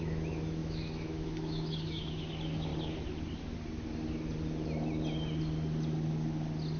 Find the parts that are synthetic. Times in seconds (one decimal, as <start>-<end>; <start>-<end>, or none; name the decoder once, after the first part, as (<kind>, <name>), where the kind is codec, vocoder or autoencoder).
0.0-2.7 (autoencoder, DAC-VAE)